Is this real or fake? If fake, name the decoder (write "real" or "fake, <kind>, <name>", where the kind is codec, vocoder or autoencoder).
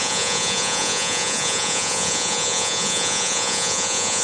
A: fake, vocoder, Vocos